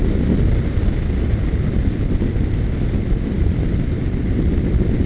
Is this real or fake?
real